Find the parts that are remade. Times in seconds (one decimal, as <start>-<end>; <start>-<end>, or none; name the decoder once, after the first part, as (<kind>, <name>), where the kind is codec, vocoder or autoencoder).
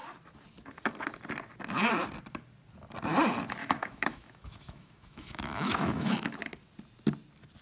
3.6-6.4 (autoencoder, DAC-VAE)